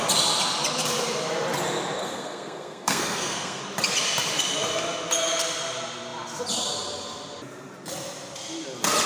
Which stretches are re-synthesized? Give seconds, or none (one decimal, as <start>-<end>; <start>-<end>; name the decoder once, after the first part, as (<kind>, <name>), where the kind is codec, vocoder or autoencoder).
2.0-3.6 (codec, SNAC)